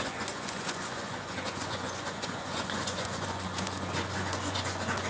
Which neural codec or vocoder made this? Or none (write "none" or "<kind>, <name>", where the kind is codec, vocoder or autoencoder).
vocoder, Vocos